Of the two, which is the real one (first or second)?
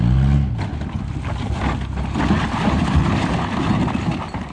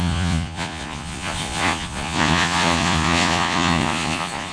first